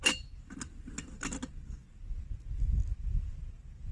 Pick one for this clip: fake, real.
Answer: real